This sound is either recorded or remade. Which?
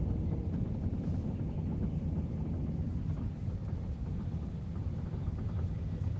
recorded